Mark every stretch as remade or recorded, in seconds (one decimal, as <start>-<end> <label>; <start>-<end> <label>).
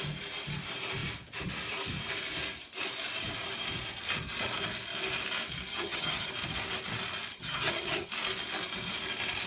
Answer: 0.0-5.7 recorded; 5.7-6.3 remade; 6.3-7.3 recorded; 7.3-8.1 remade; 8.1-9.5 recorded